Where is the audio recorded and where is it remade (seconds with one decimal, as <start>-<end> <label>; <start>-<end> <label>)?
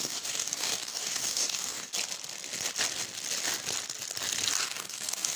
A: 0.0-1.9 remade; 1.9-4.6 recorded; 4.6-5.4 remade